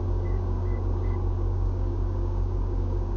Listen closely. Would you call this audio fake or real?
fake